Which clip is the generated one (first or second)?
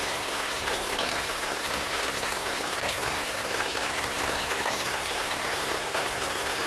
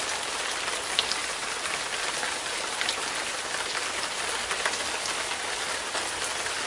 first